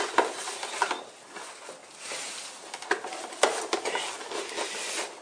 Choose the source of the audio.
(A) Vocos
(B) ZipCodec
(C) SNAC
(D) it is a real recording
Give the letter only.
D